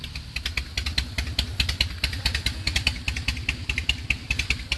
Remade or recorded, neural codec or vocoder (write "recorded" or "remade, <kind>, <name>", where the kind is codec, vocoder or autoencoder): recorded